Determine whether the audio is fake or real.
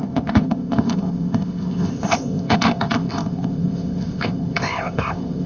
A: fake